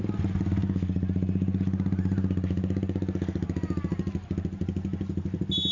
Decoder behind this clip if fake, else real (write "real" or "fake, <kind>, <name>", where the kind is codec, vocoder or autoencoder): real